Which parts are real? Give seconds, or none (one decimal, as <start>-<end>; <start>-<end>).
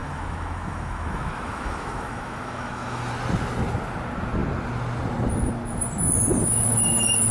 3.0-7.3